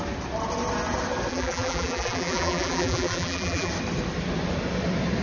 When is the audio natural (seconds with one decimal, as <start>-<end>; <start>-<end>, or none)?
0.0-1.3; 3.7-5.2